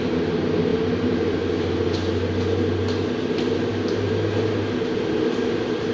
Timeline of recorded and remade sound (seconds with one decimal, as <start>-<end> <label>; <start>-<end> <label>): 0.0-5.9 recorded